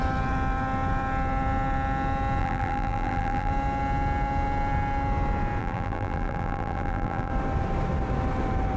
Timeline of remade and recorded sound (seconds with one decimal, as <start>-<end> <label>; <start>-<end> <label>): 0.0-2.4 recorded; 2.4-3.5 remade; 3.5-5.6 recorded; 5.6-7.3 remade; 7.3-8.8 recorded